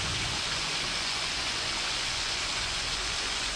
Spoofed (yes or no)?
yes